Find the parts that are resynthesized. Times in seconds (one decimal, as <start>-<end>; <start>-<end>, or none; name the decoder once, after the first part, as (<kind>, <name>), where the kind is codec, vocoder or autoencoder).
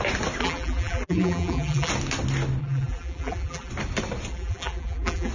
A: 0.4-1.9 (vocoder, BigVGAN v2); 2.6-3.7; 4.3-5.3